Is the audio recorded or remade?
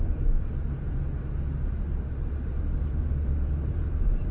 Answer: remade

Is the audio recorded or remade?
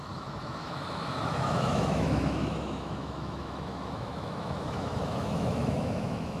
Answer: remade